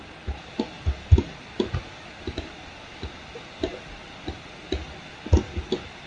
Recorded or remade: recorded